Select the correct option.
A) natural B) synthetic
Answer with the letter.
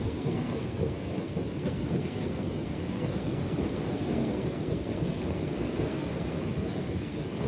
B